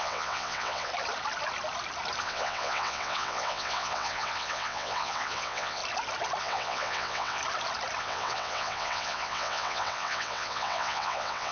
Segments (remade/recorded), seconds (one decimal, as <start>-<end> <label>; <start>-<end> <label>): 0.0-0.9 remade; 0.9-2.2 recorded; 2.2-5.8 remade; 5.8-6.4 recorded; 6.4-7.4 remade; 7.4-8.0 recorded; 8.0-11.5 remade